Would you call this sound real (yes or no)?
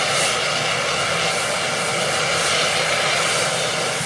yes